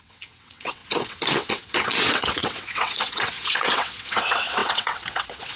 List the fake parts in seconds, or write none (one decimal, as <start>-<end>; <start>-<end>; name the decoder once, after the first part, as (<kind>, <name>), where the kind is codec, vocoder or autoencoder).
0.0-5.6 (vocoder, WaveNeXt)